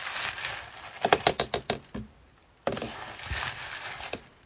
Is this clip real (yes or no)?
yes